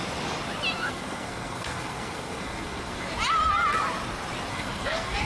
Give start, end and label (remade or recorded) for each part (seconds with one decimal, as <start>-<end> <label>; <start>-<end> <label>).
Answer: 0.0-0.8 recorded; 0.8-3.1 remade; 3.1-4.5 recorded; 4.5-5.3 remade